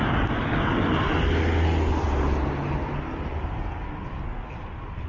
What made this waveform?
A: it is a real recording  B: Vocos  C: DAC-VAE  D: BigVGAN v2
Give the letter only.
A